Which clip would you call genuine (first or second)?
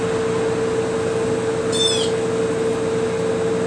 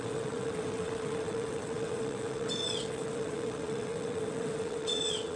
first